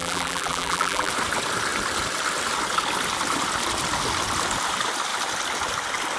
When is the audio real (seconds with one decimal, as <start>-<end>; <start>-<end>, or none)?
1.1-6.2